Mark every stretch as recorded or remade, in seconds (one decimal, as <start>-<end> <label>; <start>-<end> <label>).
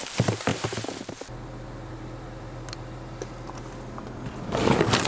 0.0-5.1 recorded